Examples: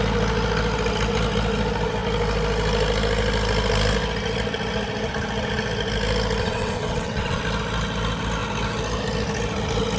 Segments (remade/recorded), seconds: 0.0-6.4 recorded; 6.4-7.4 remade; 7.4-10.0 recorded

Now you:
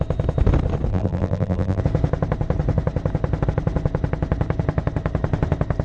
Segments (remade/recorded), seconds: 0.0-0.9 recorded; 0.9-1.8 remade; 1.8-5.8 recorded

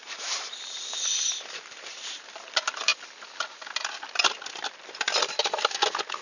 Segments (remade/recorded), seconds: 0.0-2.9 remade; 2.9-6.2 recorded

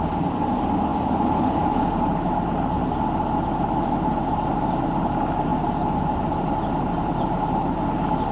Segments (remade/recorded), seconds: 0.0-8.3 recorded

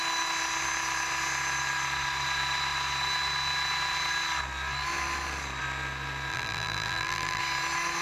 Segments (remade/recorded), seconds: 0.0-6.3 recorded; 6.3-7.4 remade; 7.4-8.0 recorded

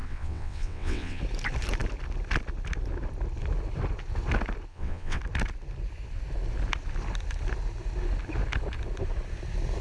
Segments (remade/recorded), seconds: 0.0-1.2 remade; 1.2-4.7 recorded; 4.7-5.2 remade; 5.2-9.8 recorded

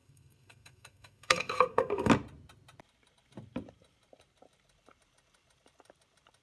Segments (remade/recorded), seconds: 0.0-2.1 remade; 2.1-6.4 recorded

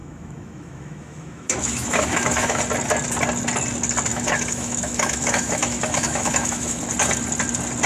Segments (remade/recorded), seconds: 0.0-2.6 remade; 2.6-4.1 recorded; 4.1-6.8 remade; 6.8-7.9 recorded